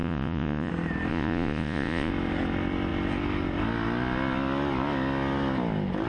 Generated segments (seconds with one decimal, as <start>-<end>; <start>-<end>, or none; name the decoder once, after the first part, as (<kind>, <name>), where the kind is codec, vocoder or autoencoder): 0.0-0.7 (vocoder, Vocos); 1.1-2.1